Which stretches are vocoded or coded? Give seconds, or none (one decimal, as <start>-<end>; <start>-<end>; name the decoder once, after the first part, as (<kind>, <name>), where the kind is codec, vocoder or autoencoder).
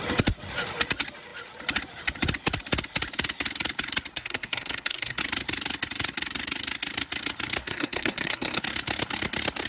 4.1-5.2 (codec, SNAC); 7.6-8.6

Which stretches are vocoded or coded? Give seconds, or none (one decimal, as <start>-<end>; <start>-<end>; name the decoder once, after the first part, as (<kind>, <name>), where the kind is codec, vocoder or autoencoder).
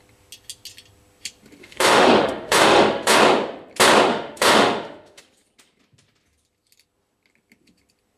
1.6-3.2 (autoencoder, DAC-VAE); 4.1-5.2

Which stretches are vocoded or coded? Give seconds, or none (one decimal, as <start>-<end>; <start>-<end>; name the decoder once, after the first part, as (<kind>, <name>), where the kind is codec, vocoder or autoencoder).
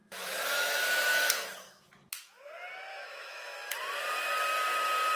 0.0-2.5 (autoencoder, DAC-VAE); 2.9-3.7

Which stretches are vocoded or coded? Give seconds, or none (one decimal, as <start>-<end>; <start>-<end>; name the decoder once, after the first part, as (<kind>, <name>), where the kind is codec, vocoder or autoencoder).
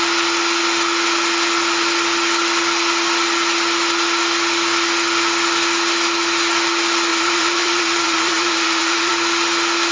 7.1-9.1 (vocoder, BigVGAN v2)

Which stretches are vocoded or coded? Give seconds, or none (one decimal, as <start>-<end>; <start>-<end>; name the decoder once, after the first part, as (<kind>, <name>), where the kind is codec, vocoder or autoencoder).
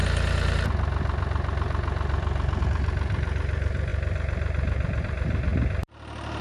0.0-5.5 (vocoder, BigVGAN v2)